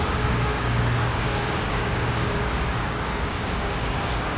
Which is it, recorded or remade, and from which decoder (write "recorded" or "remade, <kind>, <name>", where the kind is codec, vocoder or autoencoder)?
remade, codec, DAC